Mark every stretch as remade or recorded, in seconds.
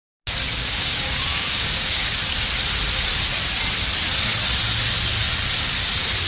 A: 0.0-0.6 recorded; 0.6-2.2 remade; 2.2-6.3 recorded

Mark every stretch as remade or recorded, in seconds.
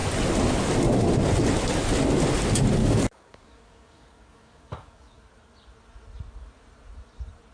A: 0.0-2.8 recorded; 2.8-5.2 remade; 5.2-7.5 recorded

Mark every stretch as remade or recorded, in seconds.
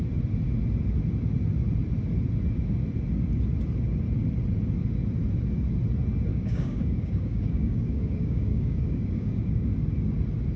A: 0.0-6.3 recorded; 6.3-9.7 remade; 9.7-10.6 recorded